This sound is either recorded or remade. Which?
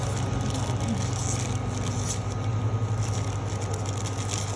recorded